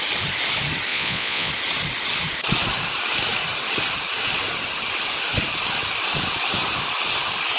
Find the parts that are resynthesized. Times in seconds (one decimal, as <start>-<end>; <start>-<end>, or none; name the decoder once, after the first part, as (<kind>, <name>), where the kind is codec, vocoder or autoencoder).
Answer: 0.9-1.5 (vocoder, Vocos)

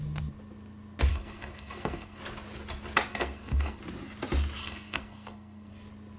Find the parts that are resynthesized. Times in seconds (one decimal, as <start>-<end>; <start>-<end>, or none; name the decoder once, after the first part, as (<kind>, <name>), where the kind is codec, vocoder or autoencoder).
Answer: 1.1-2.2 (codec, SNAC); 3.1-3.8; 4.6-5.7

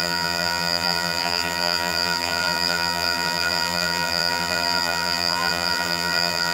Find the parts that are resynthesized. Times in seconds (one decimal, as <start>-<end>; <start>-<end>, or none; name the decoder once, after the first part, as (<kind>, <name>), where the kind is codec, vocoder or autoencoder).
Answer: 0.0-6.5 (vocoder, BigVGAN v2)

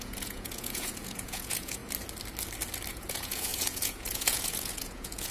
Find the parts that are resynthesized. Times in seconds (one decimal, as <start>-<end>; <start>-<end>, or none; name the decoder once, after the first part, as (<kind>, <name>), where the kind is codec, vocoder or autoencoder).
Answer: 0.0-1.8 (vocoder, Vocos); 2.9-5.3

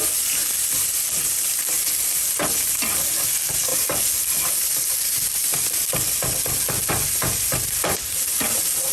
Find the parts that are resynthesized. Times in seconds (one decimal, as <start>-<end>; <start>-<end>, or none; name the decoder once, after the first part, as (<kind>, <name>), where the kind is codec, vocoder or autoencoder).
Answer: none

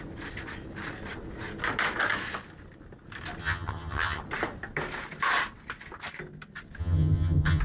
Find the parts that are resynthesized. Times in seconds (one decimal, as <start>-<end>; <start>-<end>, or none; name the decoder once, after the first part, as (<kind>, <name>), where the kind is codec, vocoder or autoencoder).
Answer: 3.4-4.2 (vocoder, HiFi-GAN); 6.8-7.6